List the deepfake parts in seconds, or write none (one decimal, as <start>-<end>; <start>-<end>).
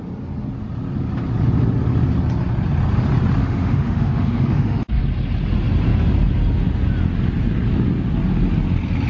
3.4-5.0